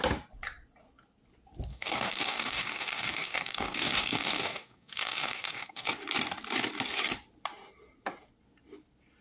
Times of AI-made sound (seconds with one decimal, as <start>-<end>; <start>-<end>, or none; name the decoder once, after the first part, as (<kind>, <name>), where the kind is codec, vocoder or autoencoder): 1.7-5.9 (codec, DAC)